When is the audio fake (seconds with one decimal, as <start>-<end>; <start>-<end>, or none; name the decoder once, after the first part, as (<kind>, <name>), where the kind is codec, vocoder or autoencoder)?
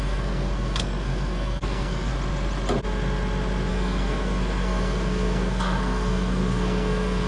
0.0-2.1 (codec, SNAC); 3.7-7.3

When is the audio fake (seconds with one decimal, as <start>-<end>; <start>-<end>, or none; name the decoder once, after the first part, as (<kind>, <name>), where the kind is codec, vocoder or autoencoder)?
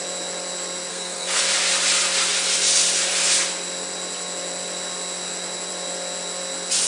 0.9-1.4 (codec, SNAC)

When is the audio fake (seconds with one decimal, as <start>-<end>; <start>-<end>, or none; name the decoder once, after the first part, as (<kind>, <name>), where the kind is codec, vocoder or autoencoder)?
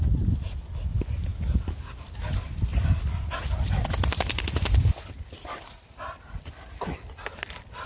none